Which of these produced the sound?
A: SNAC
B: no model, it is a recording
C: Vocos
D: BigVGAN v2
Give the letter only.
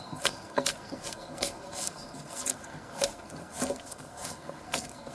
A